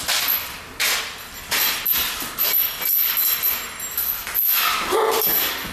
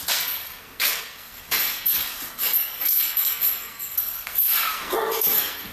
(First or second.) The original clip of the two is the first